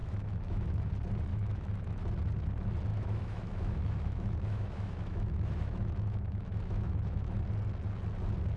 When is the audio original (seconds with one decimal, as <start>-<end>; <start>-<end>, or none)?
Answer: 0.9-1.3; 2.1-2.9; 7.4-8.6